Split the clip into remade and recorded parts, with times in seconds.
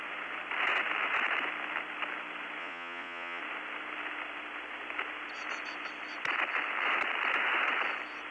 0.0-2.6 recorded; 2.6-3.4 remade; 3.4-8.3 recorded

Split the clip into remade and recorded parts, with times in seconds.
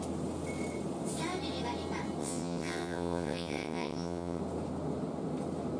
0.0-2.2 recorded; 2.2-4.4 remade; 4.4-5.8 recorded